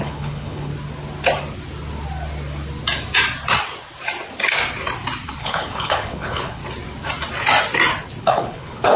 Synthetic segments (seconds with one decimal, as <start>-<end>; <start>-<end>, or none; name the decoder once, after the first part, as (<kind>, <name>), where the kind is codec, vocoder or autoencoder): 0.0-0.7 (codec, HILCodec); 5.4-6.6; 8.2-9.0